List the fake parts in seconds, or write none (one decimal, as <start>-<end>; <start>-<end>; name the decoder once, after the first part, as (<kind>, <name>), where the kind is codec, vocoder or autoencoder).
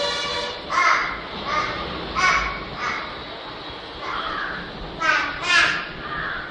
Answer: none